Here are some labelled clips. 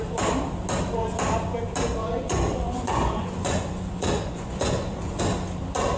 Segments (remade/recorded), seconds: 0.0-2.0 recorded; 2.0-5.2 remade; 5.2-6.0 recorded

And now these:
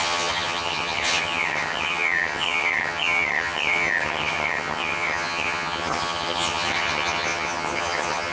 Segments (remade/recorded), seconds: 0.0-8.3 remade

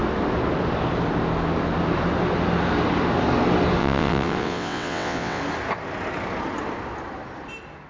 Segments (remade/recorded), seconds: 0.0-3.8 recorded; 3.8-5.4 remade; 5.4-7.9 recorded

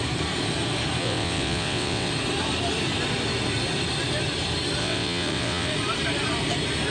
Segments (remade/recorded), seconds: 0.0-1.0 recorded; 1.0-2.1 remade; 2.1-4.8 recorded; 4.8-5.7 remade; 5.7-6.9 recorded

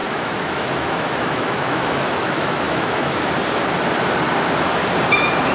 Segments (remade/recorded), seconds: 0.0-3.3 remade; 3.3-5.5 recorded

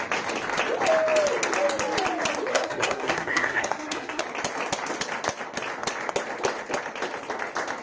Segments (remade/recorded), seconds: 0.0-2.5 recorded; 2.5-4.2 remade; 4.2-7.8 recorded